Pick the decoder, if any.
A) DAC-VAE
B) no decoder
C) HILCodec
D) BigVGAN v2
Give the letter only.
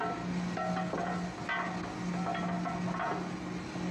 B